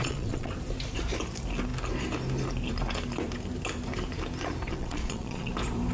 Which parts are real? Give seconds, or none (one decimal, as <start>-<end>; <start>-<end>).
0.5-4.7; 5.5-5.9